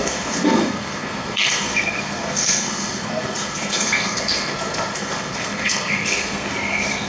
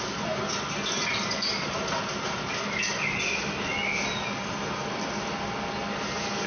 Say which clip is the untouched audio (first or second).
second